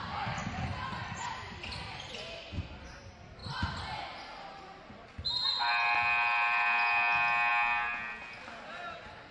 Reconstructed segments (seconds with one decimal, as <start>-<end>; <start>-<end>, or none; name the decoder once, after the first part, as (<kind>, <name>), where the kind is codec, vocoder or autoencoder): none